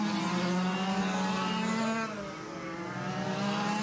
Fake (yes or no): no